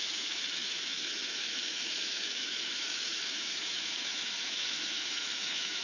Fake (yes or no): yes